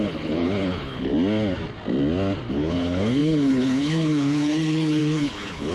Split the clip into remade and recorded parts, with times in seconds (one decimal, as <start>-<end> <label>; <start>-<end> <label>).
0.0-1.1 remade; 1.1-2.5 recorded; 2.5-5.7 remade